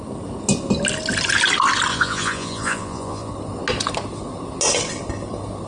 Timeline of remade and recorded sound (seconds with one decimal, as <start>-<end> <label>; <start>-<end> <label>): 0.0-1.9 recorded; 1.9-3.3 remade; 3.3-5.7 recorded